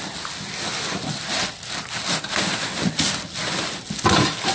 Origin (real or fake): real